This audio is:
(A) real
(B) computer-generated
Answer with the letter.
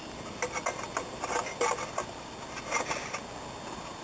A